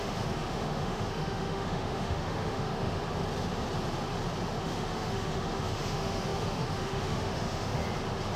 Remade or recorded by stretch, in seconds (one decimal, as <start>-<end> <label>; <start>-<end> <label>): 0.0-3.0 remade; 3.0-4.6 recorded; 4.6-7.8 remade; 7.8-8.4 recorded